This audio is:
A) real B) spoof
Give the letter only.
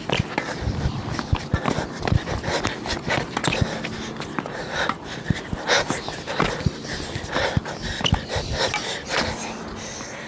A